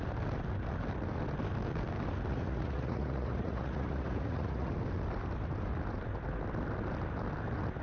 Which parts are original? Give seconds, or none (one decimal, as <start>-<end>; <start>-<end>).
0.0-2.3; 4.7-7.8